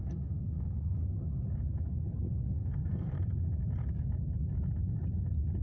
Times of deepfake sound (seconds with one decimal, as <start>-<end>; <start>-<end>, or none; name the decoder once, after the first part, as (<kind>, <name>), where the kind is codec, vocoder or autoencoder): 0.0-1.0 (codec, SNAC); 2.5-3.1